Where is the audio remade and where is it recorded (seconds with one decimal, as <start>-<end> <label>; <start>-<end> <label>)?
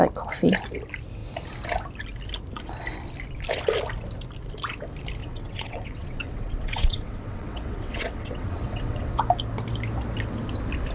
0.0-5.2 recorded; 5.2-9.2 remade; 9.2-10.9 recorded